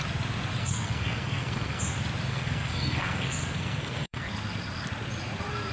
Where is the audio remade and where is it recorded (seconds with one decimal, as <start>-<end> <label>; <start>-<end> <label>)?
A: 0.0-0.6 recorded; 0.6-1.8 remade; 1.8-2.3 recorded; 2.3-4.3 remade; 4.3-5.7 recorded